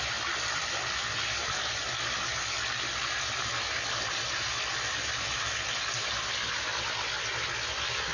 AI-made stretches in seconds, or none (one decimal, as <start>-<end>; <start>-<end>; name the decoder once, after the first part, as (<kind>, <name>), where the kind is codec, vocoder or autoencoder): none